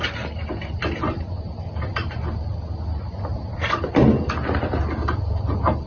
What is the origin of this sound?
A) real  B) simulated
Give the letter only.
A